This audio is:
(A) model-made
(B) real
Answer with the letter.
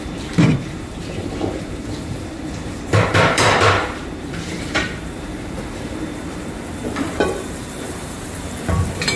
A